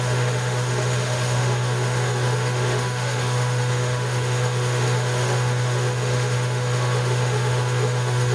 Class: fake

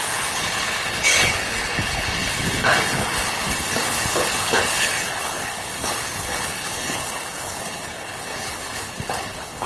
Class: fake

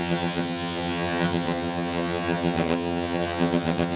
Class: fake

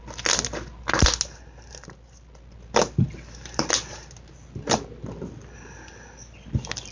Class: real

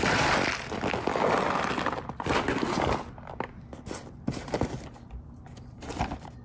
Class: real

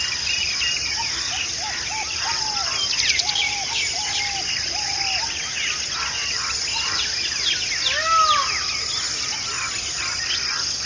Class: real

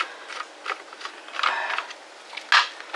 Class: real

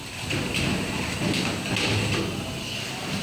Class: real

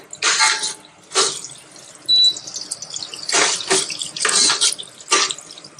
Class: real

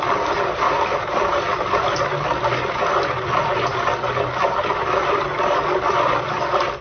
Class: real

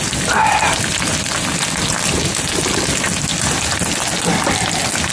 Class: real